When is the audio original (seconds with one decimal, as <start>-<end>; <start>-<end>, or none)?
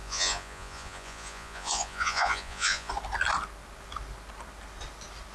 2.9-5.3